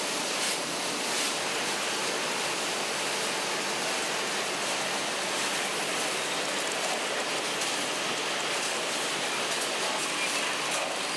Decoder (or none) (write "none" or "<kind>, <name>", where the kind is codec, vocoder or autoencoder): none